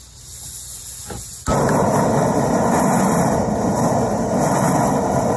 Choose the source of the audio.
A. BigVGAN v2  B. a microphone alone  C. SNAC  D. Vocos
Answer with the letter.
B